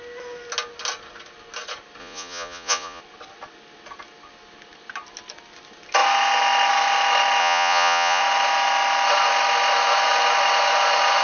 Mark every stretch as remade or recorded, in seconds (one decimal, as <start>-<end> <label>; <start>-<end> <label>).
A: 0.0-2.0 recorded; 2.0-3.0 remade; 3.0-7.4 recorded; 7.4-8.2 remade; 8.2-11.2 recorded